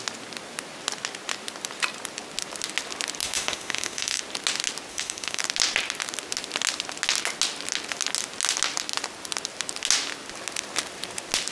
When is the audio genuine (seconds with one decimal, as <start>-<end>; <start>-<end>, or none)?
0.0-3.2; 4.2-4.9; 5.4-11.5